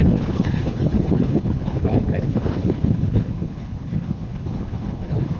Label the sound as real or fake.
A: fake